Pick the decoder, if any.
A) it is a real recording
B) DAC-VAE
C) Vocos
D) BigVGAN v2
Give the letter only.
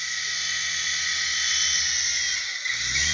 A